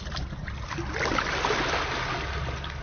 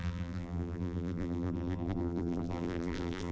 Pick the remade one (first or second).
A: second